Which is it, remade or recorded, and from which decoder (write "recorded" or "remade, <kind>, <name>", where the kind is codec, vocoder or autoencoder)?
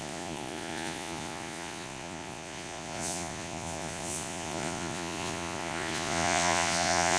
remade, vocoder, Vocos